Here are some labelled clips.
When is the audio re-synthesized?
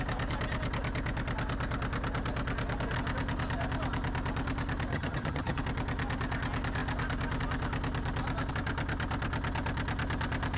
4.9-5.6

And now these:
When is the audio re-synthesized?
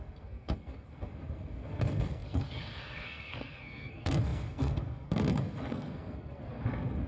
0.0-7.1